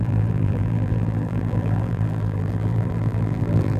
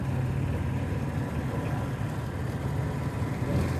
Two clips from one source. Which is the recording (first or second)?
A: second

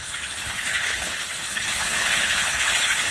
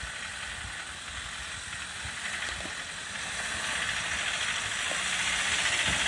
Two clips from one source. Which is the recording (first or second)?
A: second